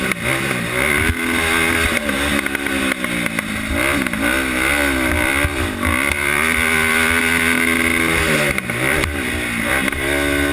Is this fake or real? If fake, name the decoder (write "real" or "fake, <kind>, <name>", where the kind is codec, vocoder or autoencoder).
real